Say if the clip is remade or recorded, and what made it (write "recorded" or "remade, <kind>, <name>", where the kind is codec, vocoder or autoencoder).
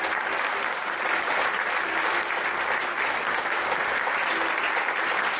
recorded